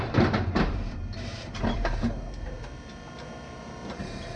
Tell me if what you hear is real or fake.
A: fake